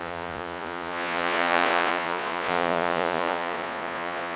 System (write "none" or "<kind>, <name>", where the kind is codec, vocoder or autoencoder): vocoder, Vocos